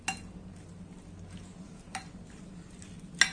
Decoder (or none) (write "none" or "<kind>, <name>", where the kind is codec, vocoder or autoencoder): none